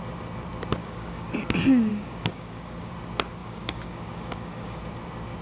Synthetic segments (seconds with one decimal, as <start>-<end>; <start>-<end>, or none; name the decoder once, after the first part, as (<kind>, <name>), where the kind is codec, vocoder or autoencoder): 0.8-1.3 (codec, DAC); 1.9-2.9; 3.4-4.8